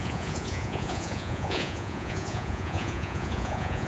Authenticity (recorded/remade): remade